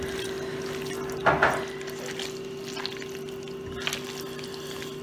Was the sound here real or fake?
real